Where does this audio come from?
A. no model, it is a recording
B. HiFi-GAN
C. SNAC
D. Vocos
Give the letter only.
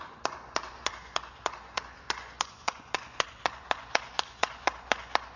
D